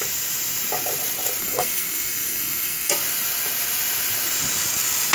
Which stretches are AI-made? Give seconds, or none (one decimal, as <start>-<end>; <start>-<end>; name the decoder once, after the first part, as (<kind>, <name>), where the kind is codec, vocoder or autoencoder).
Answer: 1.4-2.9 (codec, SNAC)